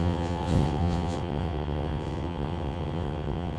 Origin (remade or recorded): remade